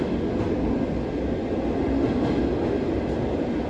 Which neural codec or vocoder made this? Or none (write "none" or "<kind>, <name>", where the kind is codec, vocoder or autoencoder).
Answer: none